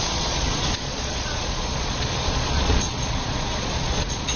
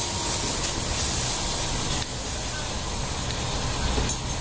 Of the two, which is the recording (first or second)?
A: second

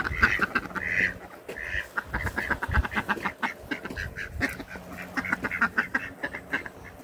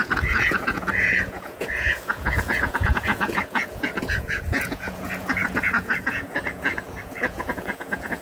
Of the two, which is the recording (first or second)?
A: first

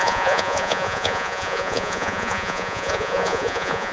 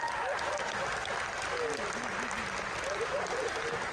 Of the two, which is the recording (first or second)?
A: second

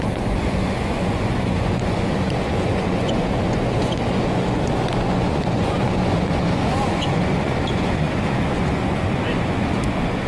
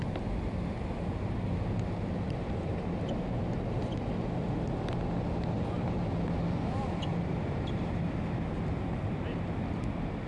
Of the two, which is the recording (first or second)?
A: second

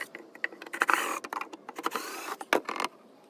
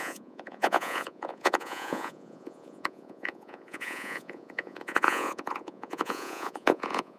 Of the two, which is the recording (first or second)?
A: first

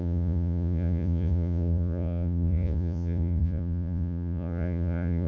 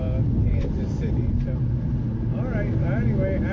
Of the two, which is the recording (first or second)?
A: second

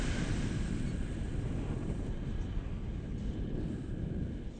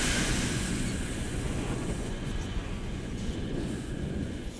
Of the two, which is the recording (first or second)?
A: first